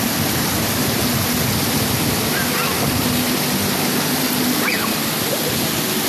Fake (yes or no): no